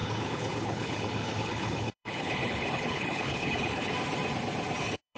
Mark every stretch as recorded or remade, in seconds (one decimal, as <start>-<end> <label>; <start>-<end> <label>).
0.0-3.9 remade; 3.9-4.8 recorded; 4.8-5.2 remade